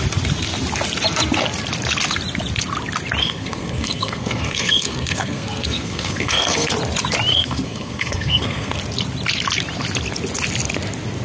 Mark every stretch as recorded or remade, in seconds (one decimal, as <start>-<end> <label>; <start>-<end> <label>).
0.0-3.2 recorded; 3.2-6.7 remade; 6.7-7.3 recorded; 7.3-8.8 remade; 8.8-11.2 recorded